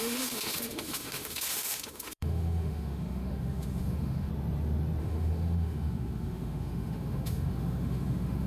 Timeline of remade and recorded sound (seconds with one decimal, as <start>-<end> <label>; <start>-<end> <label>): 0.0-4.3 remade; 4.3-5.0 recorded; 5.0-8.5 remade